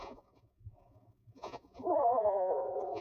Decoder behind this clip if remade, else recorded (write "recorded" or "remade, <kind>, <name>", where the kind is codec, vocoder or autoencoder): remade, vocoder, Vocos